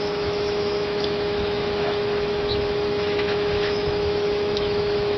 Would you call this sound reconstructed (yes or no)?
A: yes